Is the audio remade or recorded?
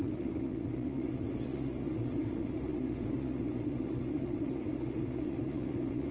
remade